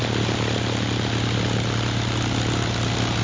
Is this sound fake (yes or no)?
no